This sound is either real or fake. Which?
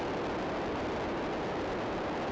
fake